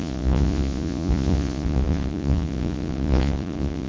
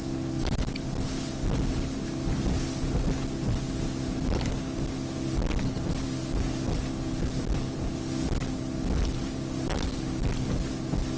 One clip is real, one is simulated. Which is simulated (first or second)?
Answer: first